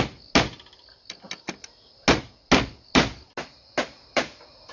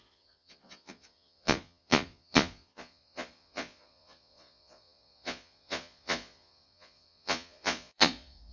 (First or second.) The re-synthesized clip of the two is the second